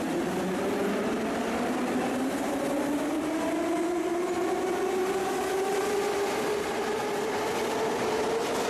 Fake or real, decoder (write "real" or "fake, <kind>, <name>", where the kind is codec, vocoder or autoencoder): real